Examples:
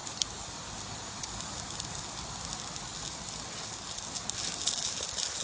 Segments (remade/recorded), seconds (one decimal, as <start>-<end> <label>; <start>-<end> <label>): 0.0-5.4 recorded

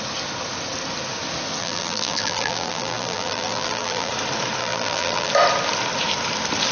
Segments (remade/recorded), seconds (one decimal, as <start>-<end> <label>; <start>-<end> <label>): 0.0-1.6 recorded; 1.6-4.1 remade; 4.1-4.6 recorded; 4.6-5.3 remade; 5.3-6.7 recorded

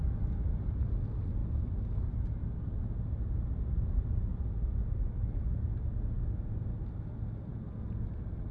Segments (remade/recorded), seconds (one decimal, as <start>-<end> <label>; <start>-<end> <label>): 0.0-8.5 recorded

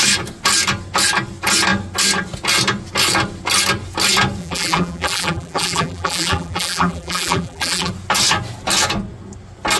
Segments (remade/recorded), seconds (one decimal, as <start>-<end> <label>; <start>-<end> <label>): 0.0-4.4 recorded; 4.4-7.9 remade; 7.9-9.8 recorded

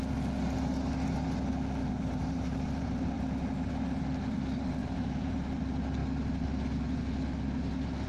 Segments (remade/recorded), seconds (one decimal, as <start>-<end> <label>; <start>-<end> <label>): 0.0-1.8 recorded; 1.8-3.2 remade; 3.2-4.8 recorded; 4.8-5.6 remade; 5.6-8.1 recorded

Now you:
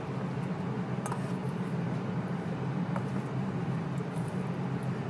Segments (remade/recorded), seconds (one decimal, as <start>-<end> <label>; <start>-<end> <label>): 0.0-1.4 recorded; 1.4-4.5 remade; 4.5-5.1 recorded

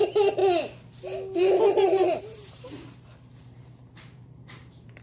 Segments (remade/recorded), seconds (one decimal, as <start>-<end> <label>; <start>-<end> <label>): 0.0-0.4 remade; 0.4-2.2 recorded; 2.2-5.0 remade

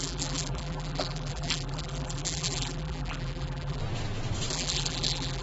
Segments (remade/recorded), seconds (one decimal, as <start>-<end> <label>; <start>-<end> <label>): 0.0-3.8 remade; 3.8-4.5 recorded; 4.5-5.4 remade